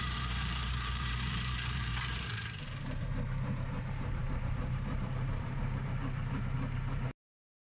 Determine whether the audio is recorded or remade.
remade